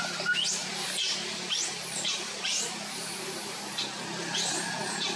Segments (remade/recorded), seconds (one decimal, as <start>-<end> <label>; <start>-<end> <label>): 0.0-0.6 recorded; 0.6-3.7 remade; 3.7-5.2 recorded